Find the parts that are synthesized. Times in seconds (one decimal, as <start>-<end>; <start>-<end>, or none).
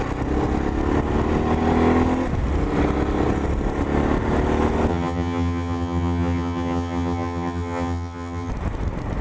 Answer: 4.9-8.5